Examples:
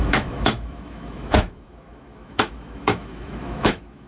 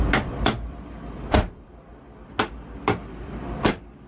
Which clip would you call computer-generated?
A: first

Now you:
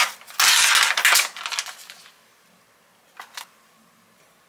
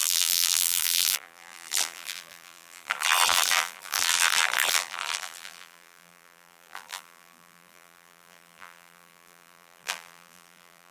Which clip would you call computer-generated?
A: second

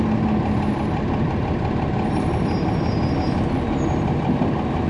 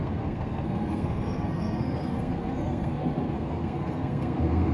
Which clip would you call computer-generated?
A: second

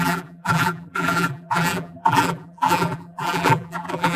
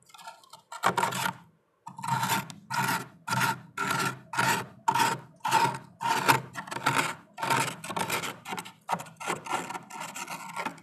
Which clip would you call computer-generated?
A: first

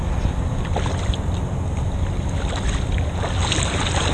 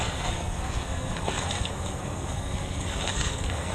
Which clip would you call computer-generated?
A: second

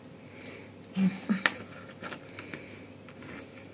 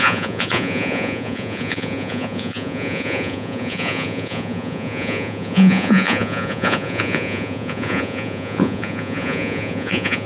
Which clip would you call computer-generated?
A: second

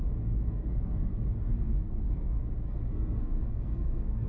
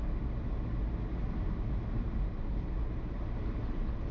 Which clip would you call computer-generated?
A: first